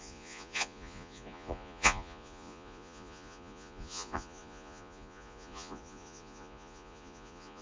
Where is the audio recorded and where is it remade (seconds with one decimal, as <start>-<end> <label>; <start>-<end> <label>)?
0.0-7.6 remade